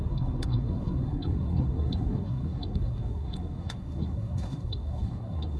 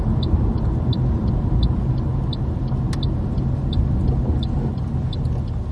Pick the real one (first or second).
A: second